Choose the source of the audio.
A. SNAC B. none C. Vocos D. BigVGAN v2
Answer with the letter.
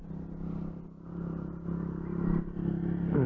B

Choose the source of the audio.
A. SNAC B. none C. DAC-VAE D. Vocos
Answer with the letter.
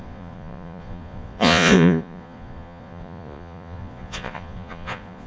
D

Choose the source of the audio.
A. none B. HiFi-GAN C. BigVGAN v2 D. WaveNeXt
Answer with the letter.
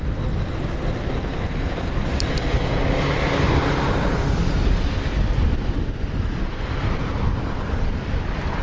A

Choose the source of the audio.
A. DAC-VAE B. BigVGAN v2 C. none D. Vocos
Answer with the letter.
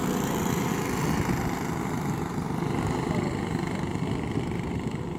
C